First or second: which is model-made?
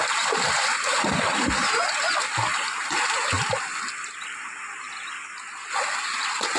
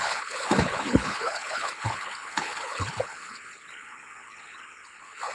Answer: second